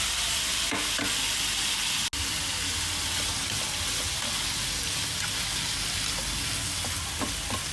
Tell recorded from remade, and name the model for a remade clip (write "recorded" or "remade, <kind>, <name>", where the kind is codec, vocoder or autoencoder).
recorded